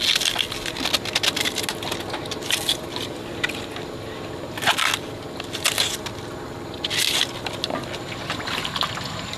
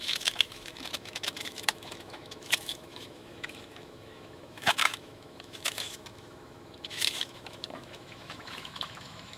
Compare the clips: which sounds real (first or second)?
first